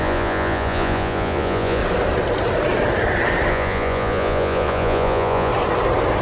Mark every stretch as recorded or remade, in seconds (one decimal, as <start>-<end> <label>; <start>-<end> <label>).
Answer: 0.0-1.8 remade; 1.8-3.5 recorded; 3.5-5.5 remade; 5.5-6.2 recorded